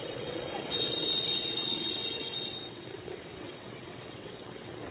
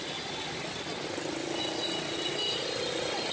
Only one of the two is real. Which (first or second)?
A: second